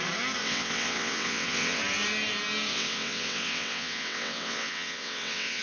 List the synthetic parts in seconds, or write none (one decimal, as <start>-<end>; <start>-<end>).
0.4-1.8; 2.7-5.6

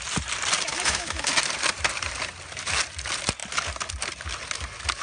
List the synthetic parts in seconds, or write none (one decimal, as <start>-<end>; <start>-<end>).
0.7-1.3

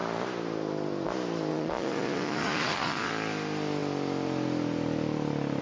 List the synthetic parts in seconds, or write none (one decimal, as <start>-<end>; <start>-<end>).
1.5-3.1

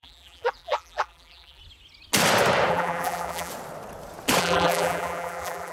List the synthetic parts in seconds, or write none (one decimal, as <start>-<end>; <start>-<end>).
0.0-1.6; 2.7-3.5; 4.4-5.7

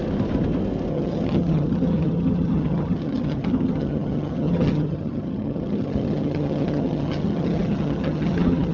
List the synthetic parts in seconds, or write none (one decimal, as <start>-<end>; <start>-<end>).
0.9-8.7

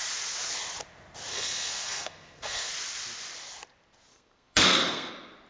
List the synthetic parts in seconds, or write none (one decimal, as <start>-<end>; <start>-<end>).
1.3-2.7; 4.1-5.1